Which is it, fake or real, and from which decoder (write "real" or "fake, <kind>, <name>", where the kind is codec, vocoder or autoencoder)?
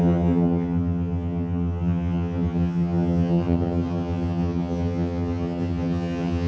fake, vocoder, HiFi-GAN